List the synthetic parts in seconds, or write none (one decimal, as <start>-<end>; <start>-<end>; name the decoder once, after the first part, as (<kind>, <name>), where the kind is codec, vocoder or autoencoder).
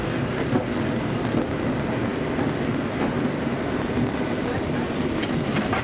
none